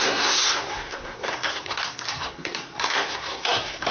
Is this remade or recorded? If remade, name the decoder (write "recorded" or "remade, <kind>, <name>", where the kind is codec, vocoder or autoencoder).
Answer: remade, codec, SNAC